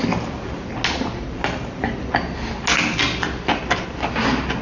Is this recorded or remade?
recorded